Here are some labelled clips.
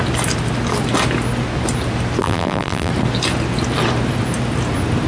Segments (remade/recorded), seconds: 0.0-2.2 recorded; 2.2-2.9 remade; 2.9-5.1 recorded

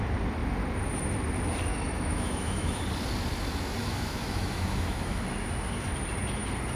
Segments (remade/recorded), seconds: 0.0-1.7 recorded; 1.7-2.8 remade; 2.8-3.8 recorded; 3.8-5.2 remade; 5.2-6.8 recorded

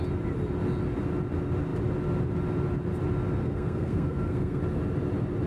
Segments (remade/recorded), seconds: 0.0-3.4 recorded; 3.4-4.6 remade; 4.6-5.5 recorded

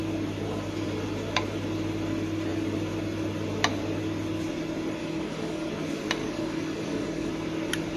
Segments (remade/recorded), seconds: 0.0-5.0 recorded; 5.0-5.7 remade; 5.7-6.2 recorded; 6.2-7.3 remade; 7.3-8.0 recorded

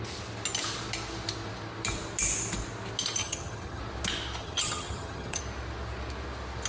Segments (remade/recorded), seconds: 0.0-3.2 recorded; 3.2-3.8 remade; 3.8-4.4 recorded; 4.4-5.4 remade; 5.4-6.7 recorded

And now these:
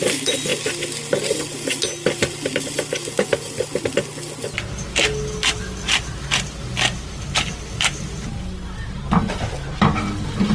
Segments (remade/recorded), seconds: 0.0-10.5 recorded

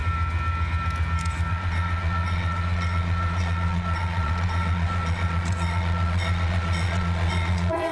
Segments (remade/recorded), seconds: 0.0-1.5 recorded; 1.5-7.9 remade

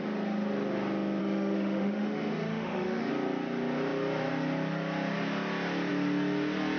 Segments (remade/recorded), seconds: 0.0-1.2 recorded; 1.2-3.1 remade; 3.1-6.8 recorded